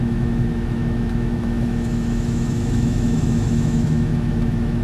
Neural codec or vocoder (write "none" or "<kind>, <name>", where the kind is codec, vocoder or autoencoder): autoencoder, DAC-VAE